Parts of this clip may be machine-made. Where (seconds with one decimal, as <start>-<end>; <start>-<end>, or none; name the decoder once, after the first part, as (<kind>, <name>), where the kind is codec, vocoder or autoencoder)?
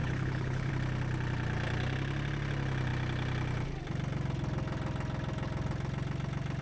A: 0.0-0.7 (codec, HILCodec)